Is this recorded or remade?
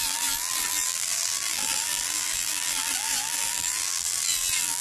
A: remade